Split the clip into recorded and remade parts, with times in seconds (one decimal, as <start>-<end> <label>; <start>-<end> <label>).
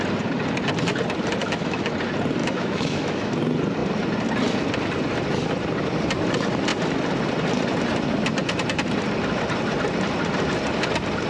0.0-1.4 recorded; 1.4-1.9 remade; 1.9-2.4 recorded; 2.4-3.3 remade; 3.3-11.3 recorded